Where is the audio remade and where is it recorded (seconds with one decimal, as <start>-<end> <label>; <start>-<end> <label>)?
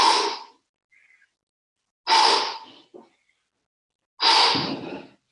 0.0-5.3 recorded